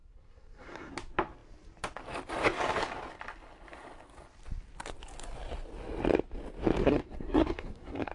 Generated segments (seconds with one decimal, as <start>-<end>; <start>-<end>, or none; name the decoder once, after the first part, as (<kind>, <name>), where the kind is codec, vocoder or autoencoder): 0.0-0.9 (codec, SNAC); 6.8-8.1